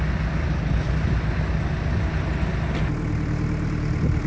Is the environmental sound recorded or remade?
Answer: recorded